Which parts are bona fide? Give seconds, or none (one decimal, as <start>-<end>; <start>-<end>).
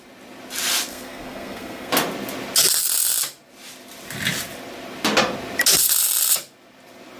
0.0-0.9; 1.9-7.2